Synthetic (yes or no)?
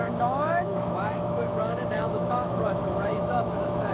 yes